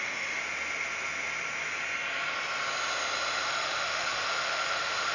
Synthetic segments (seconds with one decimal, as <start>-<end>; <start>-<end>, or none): 0.0-0.4; 3.5-5.1